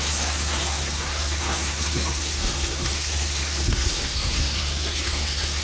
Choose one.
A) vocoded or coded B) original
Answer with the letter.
A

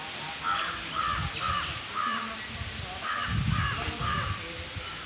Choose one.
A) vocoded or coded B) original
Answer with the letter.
B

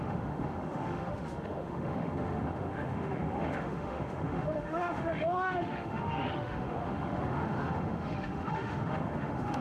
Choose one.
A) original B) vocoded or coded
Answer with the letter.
B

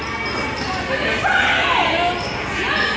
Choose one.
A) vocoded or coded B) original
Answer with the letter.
B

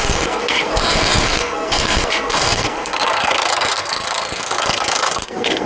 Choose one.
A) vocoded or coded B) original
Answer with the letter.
A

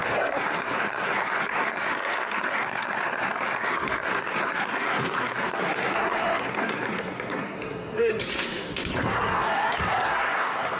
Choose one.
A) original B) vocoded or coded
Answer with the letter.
B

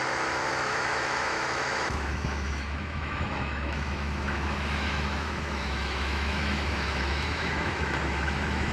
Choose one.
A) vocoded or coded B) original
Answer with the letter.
A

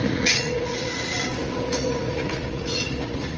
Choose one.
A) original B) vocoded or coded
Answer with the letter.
B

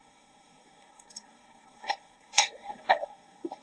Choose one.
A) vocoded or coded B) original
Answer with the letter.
A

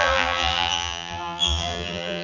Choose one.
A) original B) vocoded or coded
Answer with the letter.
B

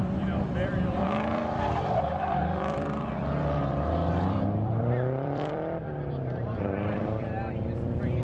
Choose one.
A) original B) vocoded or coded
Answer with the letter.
B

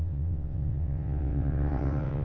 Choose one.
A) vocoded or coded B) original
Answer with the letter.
A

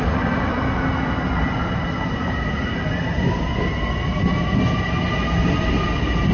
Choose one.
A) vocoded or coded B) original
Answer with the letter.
B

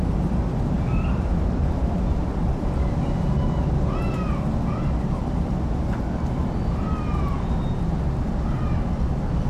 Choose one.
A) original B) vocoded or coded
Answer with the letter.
A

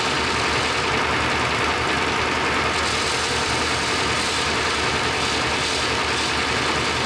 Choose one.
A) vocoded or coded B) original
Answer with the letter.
B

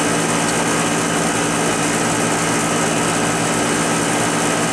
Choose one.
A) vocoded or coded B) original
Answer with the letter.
B